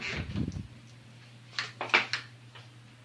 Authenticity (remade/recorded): recorded